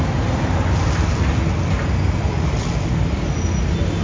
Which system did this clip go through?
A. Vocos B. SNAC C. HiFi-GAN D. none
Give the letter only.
D